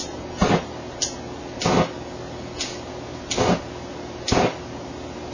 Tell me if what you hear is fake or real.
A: real